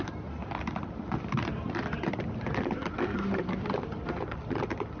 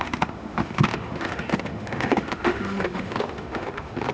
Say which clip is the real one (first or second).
first